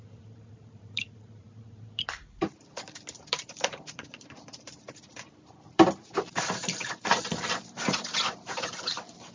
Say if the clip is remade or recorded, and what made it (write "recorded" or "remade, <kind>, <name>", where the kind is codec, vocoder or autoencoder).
remade, vocoder, BigVGAN v2